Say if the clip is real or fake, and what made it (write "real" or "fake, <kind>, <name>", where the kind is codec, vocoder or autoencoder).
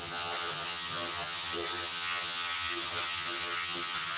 fake, vocoder, HiFi-GAN